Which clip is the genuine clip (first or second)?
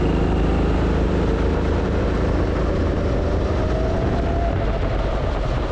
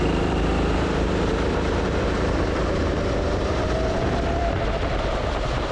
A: first